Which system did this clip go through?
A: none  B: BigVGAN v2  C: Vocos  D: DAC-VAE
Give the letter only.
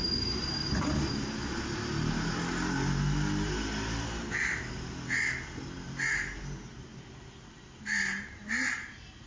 A